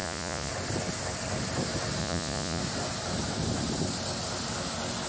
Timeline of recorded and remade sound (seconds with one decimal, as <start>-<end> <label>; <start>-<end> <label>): 0.0-0.5 remade; 0.5-2.0 recorded; 2.0-2.6 remade; 2.6-5.1 recorded

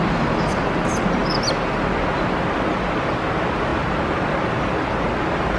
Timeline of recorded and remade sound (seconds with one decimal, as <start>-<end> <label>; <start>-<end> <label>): 0.0-5.6 recorded

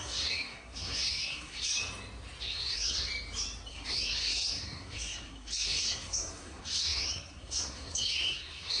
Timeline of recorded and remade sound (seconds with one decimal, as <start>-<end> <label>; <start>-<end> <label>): 0.0-1.7 remade; 1.7-2.4 recorded; 2.4-3.1 remade; 3.1-3.7 recorded; 3.7-8.8 remade

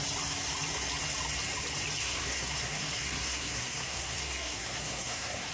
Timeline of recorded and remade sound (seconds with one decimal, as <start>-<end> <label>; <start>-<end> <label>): 0.0-2.0 recorded; 2.0-5.5 remade

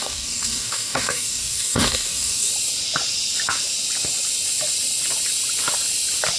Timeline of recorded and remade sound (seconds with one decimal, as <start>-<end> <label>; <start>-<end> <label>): 0.0-2.5 remade; 2.5-6.4 recorded

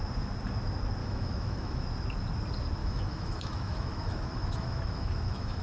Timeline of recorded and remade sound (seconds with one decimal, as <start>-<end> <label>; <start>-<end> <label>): 0.0-1.0 recorded; 1.0-1.8 remade; 1.8-2.8 recorded; 2.8-5.6 remade

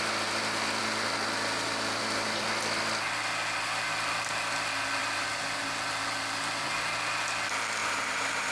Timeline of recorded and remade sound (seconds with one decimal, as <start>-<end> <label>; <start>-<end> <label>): 0.0-5.0 recorded; 5.0-5.6 remade; 5.6-7.8 recorded; 7.8-8.5 remade

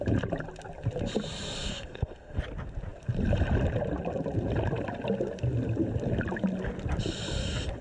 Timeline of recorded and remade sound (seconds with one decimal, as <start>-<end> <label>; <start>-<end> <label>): 0.0-1.7 recorded; 1.7-2.4 remade; 2.4-7.8 recorded